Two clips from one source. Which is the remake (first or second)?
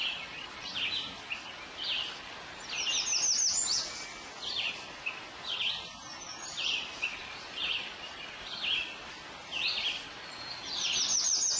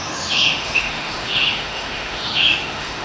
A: second